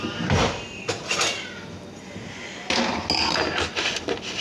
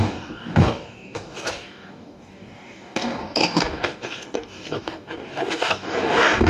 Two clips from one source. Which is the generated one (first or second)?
second